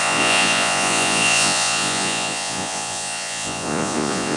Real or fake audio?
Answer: fake